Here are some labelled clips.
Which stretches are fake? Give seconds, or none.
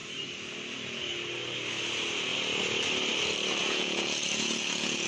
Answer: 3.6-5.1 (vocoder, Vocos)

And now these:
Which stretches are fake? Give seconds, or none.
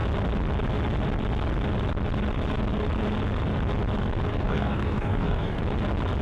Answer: 4.3-5.6 (codec, DAC)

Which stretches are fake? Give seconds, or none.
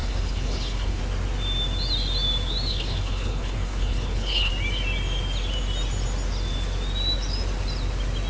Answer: 0.0-1.0 (codec, HILCodec); 2.7-4.5